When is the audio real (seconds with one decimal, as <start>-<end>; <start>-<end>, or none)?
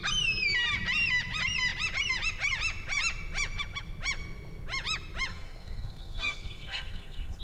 0.0-5.3